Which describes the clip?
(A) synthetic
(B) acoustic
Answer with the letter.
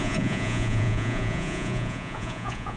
A